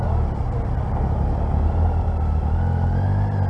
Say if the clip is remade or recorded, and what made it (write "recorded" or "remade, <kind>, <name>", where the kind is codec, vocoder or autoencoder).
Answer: recorded